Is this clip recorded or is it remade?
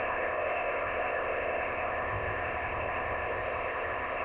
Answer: remade